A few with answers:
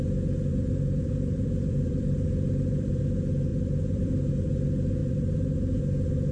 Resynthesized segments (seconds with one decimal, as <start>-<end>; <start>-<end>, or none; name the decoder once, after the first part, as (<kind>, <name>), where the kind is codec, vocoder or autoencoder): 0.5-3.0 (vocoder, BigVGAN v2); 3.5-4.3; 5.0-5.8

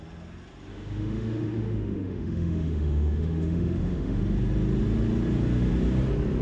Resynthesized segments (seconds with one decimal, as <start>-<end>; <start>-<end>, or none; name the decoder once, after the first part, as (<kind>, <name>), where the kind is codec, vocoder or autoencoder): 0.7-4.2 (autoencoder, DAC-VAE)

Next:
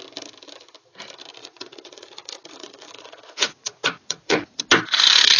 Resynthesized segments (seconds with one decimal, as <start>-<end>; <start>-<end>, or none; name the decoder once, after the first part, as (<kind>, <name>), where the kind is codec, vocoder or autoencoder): 1.4-4.6 (vocoder, Vocos)

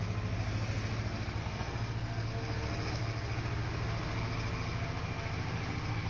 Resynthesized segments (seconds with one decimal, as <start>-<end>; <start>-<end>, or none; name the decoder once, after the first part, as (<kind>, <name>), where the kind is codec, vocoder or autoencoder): 1.4-2.3 (codec, SNAC)

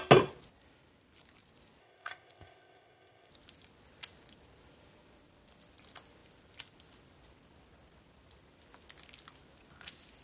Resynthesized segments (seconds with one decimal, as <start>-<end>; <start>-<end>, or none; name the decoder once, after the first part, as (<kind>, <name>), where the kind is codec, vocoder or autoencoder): 1.8-3.3 (codec, ZipCodec)